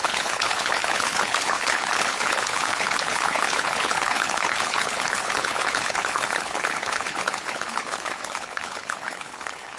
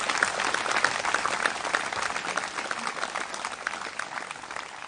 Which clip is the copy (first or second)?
first